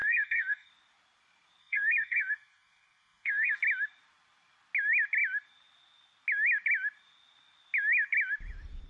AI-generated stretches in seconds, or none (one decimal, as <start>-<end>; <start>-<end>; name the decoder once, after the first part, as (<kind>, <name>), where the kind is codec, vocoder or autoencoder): 0.0-0.7 (codec, SNAC); 1.6-3.5